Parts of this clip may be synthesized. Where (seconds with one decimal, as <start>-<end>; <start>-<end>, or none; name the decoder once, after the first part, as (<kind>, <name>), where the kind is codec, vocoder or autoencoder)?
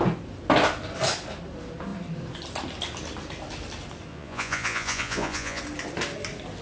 4.1-5.6 (vocoder, Vocos)